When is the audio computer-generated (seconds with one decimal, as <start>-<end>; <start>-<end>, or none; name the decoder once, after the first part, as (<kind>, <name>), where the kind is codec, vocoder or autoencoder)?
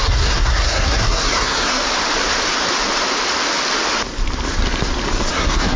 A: 0.0-1.8 (codec, SNAC); 5.3-5.8